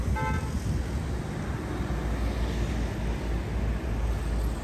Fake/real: real